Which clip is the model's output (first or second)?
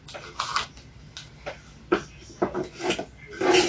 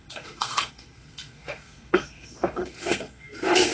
second